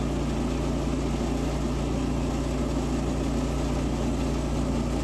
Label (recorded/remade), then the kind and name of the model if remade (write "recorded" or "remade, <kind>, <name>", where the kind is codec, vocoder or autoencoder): recorded